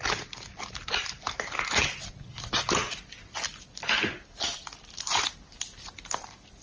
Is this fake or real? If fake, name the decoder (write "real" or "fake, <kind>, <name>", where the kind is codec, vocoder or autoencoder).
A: real